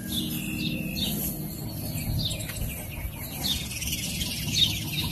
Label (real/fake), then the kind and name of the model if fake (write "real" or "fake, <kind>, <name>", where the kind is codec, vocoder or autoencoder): real